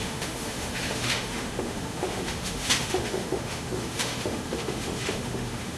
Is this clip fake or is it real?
fake